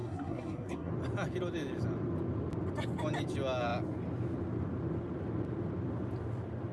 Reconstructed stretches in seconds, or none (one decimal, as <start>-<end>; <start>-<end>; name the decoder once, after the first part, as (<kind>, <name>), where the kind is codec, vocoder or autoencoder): 0.0-0.9 (codec, SNAC)